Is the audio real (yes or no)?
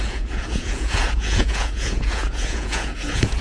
no